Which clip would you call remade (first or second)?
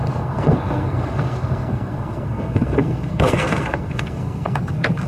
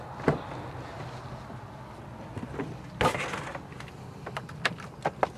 first